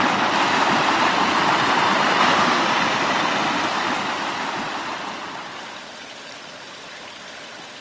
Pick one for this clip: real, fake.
real